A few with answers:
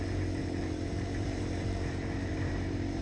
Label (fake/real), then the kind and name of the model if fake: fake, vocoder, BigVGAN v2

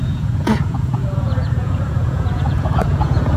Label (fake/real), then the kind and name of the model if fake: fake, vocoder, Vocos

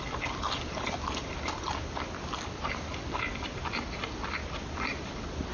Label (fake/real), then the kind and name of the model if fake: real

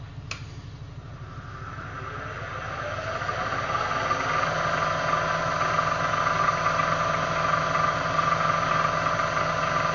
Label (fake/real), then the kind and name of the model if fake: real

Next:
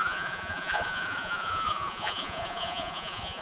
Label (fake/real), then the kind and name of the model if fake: fake, vocoder, Vocos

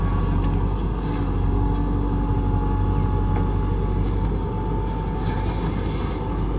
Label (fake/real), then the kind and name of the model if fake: real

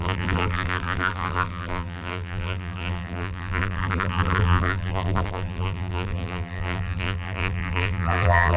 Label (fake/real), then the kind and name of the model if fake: fake, vocoder, BigVGAN v2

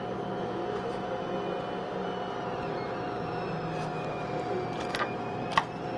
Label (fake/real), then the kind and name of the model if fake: real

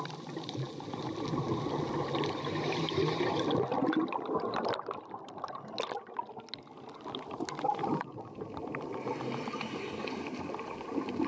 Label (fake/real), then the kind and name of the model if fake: real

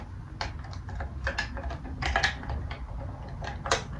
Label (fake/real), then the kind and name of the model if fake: real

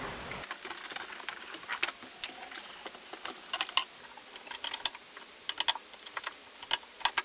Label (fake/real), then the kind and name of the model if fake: real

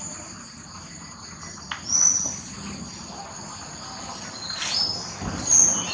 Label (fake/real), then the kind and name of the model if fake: real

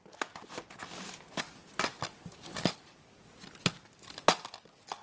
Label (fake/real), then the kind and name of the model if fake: real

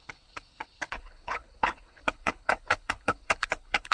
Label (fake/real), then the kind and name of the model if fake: fake, codec, HILCodec